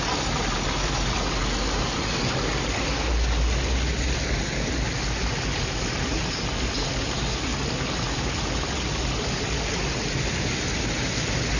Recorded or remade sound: recorded